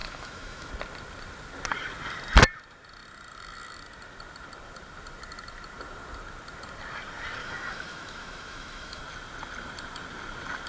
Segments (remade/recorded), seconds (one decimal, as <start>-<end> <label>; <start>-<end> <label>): 0.0-0.7 remade; 0.7-7.4 recorded; 7.4-9.0 remade; 9.0-10.7 recorded